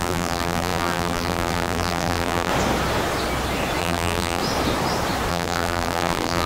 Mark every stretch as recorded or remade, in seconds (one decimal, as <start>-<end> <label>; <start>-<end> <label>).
0.0-2.5 remade; 2.5-3.8 recorded; 3.8-4.4 remade; 4.4-5.3 recorded; 5.3-6.5 remade